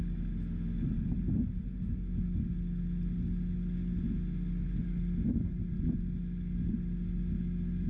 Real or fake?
real